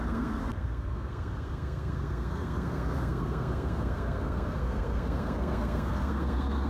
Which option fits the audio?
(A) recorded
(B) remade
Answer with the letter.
B